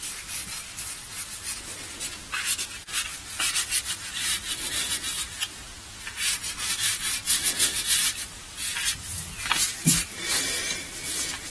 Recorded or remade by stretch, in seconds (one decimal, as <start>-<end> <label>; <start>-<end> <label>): 0.0-11.5 recorded